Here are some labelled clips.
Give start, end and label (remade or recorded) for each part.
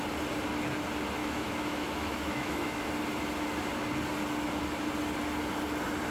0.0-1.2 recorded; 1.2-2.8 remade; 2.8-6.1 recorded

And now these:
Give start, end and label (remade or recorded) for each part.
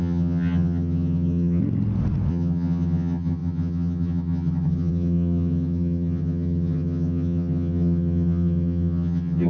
0.0-1.6 remade; 1.6-2.3 recorded; 2.3-9.5 remade